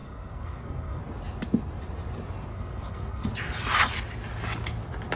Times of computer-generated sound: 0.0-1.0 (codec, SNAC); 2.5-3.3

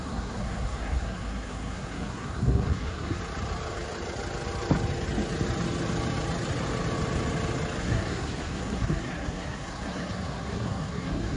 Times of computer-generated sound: 0.0-3.2 (codec, SNAC); 7.8-11.4

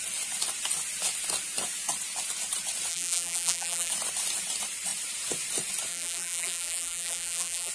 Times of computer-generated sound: 2.9-3.9 (vocoder, BigVGAN v2); 5.9-7.7

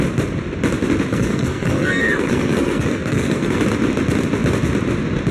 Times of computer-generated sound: 1.1-3.6 (codec, SNAC)

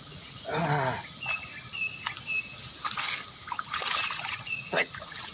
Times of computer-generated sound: 0.0-0.5 (vocoder, Vocos); 3.7-5.3

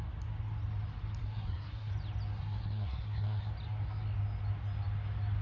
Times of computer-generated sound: 1.2-1.9 (codec, SNAC); 2.3-3.5